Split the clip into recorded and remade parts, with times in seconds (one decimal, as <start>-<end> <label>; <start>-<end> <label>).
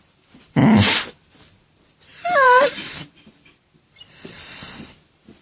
0.0-0.6 recorded; 0.6-1.5 remade; 1.5-2.1 recorded; 2.1-4.9 remade; 4.9-5.4 recorded